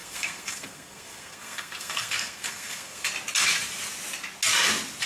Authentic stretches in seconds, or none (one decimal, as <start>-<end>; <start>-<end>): 3.1-5.1